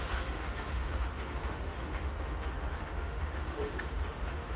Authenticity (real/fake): fake